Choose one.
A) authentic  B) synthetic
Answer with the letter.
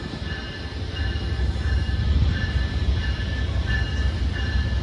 A